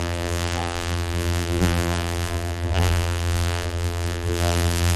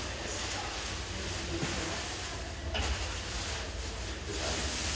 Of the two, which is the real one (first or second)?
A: second